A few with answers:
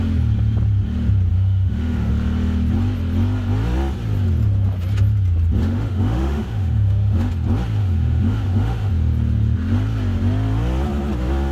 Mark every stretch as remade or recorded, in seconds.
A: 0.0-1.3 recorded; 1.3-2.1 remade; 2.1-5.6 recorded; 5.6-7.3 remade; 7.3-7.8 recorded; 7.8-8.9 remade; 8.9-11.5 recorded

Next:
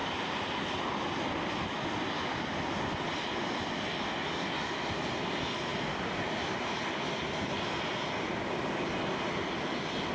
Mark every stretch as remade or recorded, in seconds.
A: 0.0-1.0 remade; 1.0-10.1 recorded

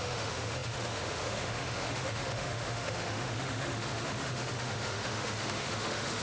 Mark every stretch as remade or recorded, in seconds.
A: 0.0-6.2 remade

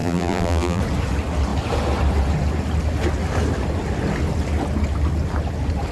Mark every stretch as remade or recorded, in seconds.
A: 0.0-0.8 remade; 0.8-5.9 recorded

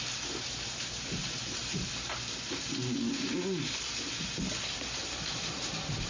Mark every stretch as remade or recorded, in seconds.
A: 0.0-1.2 recorded; 1.2-2.7 remade; 2.7-5.0 recorded; 5.0-6.1 remade

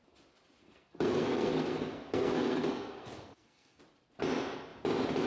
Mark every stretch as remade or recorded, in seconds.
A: 0.0-0.6 recorded; 0.6-3.8 remade; 3.8-5.3 recorded